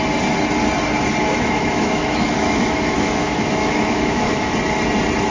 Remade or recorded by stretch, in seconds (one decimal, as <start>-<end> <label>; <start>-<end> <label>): 0.0-1.3 recorded; 1.3-4.5 remade; 4.5-5.3 recorded